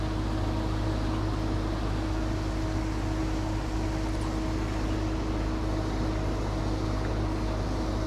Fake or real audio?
real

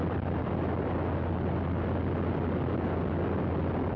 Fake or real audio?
real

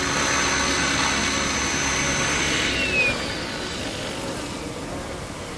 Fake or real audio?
real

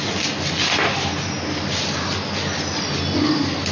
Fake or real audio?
real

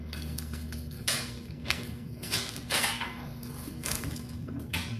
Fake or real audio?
fake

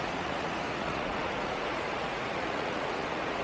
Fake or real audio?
fake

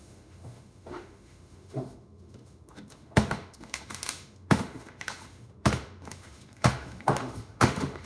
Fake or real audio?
fake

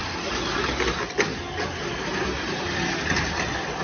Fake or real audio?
real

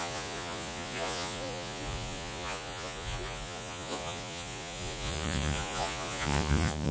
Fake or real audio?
fake